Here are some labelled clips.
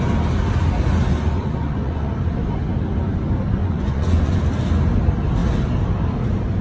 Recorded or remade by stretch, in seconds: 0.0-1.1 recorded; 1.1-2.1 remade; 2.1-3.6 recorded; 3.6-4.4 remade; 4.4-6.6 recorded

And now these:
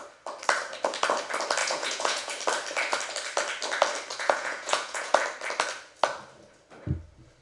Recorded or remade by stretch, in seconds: 0.0-1.6 recorded; 1.6-2.3 remade; 2.3-4.1 recorded; 4.1-5.1 remade; 5.1-7.4 recorded

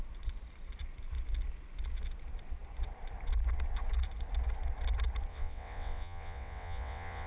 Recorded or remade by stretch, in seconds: 0.0-5.3 recorded; 5.3-7.3 remade

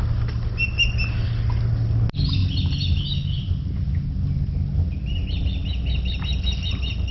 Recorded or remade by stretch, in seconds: 0.0-7.1 recorded

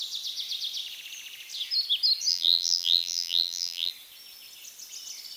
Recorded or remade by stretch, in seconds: 0.0-2.3 recorded; 2.3-3.9 remade; 3.9-5.4 recorded

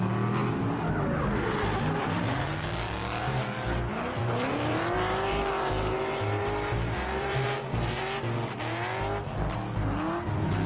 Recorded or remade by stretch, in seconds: 0.0-4.2 recorded; 4.2-8.0 remade; 8.0-10.7 recorded

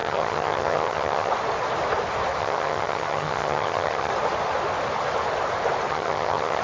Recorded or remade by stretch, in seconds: 0.0-1.3 remade; 1.3-2.4 recorded; 2.4-4.1 remade; 4.1-5.9 recorded; 5.9-6.6 remade

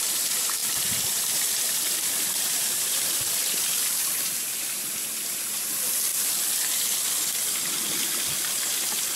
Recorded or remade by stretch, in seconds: 0.0-6.1 remade; 6.1-8.7 recorded; 8.7-9.2 remade